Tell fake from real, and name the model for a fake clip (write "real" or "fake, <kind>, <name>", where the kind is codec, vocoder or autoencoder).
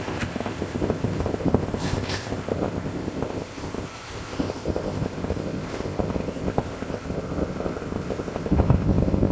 fake, codec, ZipCodec